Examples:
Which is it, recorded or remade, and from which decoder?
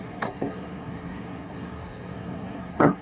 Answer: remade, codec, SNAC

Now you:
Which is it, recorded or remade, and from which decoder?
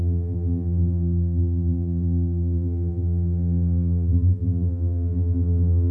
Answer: remade, vocoder, BigVGAN v2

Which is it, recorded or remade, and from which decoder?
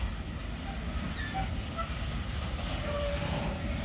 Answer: recorded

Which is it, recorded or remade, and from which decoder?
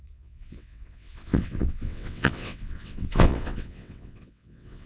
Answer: remade, vocoder, WaveNeXt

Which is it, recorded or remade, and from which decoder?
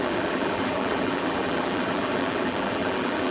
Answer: remade, vocoder, BigVGAN v2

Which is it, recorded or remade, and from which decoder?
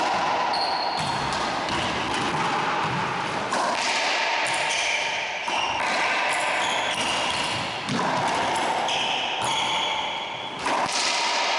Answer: recorded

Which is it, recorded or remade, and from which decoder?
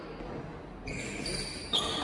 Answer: recorded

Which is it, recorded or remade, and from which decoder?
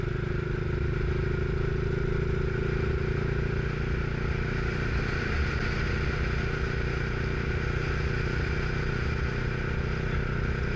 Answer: recorded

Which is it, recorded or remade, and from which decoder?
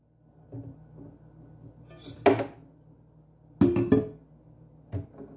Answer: recorded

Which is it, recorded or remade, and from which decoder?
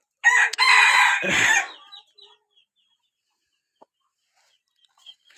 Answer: recorded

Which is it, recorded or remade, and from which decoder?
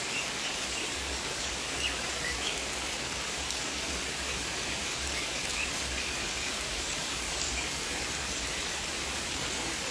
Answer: remade, codec, DAC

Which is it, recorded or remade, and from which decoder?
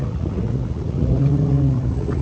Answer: remade, vocoder, Vocos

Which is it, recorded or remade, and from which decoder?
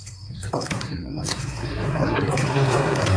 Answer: remade, codec, SNAC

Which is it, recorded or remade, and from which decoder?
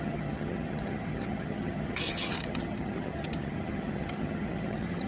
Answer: remade, vocoder, HiFi-GAN